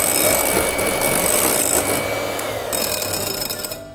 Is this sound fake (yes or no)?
no